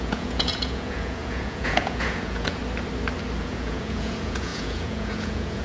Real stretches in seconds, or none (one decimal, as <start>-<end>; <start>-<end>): 2.6-3.4